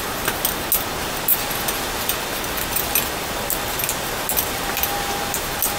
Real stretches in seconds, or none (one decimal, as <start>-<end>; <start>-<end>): 0.0-5.8